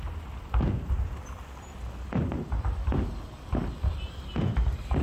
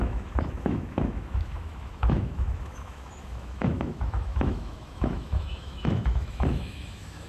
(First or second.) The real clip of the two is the first